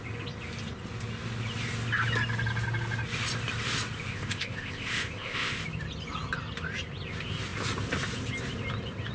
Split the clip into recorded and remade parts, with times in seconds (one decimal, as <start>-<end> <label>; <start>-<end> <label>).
0.0-4.1 recorded; 4.1-5.6 remade; 5.6-9.1 recorded